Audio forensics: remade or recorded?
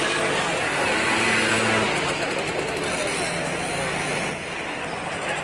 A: recorded